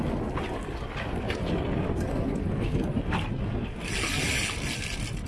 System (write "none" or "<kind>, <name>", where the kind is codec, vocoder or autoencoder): none